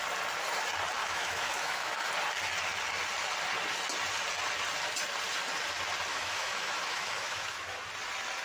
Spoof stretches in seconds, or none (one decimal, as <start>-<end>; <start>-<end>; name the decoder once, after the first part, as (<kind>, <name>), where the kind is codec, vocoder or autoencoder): 1.0-2.1 (autoencoder, DAC-VAE); 6.1-7.8